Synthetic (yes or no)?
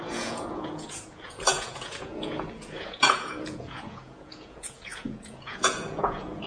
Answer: yes